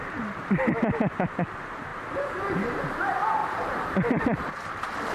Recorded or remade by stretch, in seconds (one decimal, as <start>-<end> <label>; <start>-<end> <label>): 0.0-1.9 recorded; 1.9-2.8 remade; 2.8-3.4 recorded; 3.4-4.5 remade; 4.5-5.1 recorded